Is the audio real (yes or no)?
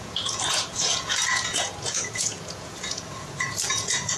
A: no